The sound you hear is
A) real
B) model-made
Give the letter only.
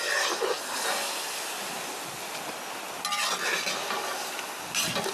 A